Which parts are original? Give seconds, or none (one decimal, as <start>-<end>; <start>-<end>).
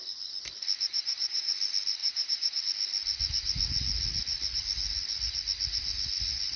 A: 0.0-0.9; 1.5-2.0; 2.6-6.6